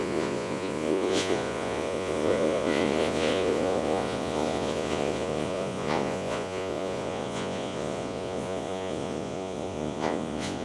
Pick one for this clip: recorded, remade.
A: remade